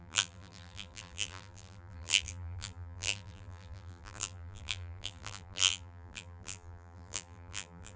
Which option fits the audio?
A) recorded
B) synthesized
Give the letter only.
B